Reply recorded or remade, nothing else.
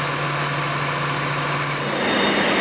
recorded